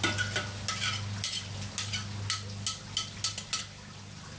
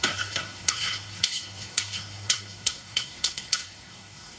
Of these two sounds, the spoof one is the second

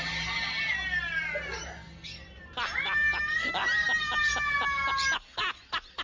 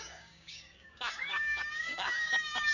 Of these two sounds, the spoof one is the second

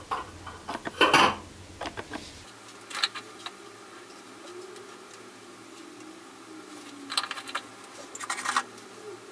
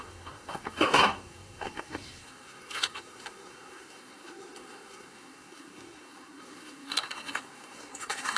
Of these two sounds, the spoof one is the second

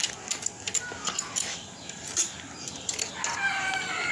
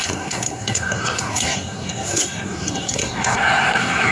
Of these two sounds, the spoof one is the second